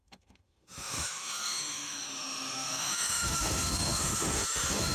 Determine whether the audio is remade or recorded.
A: remade